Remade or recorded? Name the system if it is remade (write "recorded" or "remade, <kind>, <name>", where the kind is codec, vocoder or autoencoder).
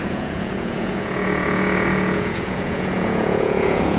remade, vocoder, Vocos